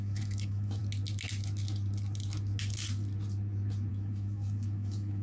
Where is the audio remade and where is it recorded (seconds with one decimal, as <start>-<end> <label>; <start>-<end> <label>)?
0.0-0.8 remade; 0.8-3.9 recorded; 3.9-5.2 remade

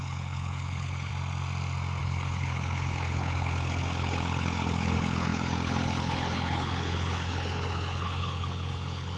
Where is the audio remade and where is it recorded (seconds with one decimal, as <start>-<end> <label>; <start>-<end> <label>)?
0.0-1.1 remade; 1.1-2.0 recorded; 2.0-9.2 remade